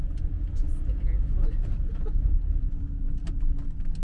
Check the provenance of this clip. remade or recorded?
recorded